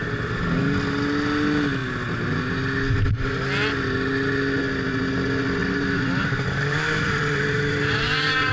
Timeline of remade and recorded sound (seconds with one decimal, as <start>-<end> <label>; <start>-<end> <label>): 0.0-5.6 recorded; 5.6-8.5 remade